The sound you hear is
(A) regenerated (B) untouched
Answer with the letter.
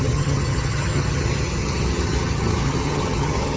A